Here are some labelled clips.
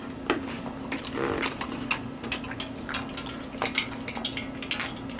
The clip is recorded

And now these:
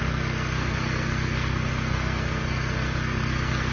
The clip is remade